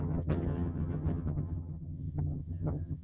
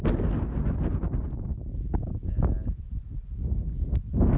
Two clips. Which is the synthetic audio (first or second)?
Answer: first